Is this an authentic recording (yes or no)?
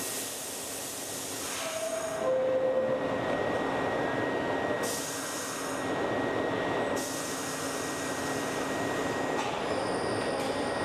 yes